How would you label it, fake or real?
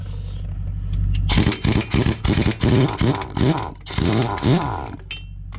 real